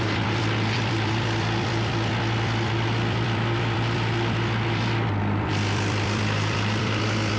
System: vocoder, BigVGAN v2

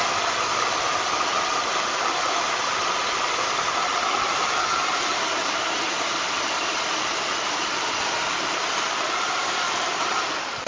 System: none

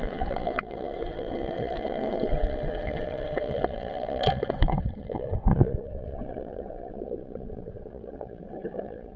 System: vocoder, WaveNeXt